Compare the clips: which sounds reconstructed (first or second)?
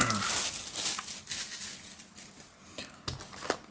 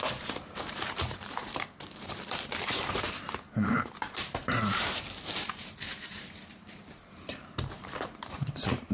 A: second